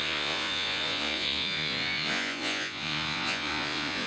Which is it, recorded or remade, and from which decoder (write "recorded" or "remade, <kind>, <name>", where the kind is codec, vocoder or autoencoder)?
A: remade, vocoder, Vocos